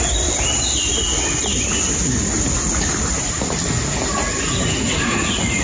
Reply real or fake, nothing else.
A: real